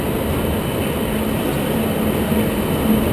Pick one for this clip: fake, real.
real